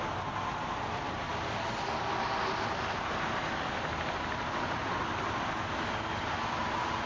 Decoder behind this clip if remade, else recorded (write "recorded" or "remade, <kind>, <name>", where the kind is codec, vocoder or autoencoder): recorded